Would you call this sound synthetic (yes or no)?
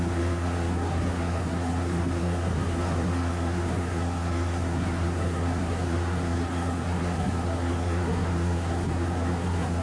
yes